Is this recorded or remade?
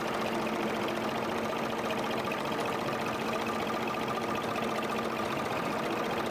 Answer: recorded